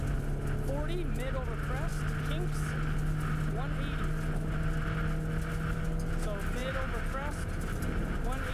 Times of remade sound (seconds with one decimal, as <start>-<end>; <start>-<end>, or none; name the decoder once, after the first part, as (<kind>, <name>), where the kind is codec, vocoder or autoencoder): none